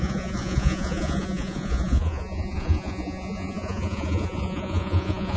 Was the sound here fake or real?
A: fake